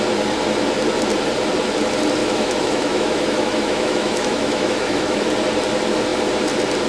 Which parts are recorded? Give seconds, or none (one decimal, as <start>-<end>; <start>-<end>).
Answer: 0.0-2.2; 5.2-6.9

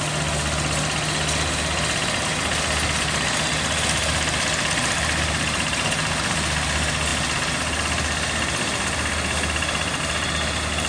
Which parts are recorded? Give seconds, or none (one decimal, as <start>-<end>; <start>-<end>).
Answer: 0.0-10.9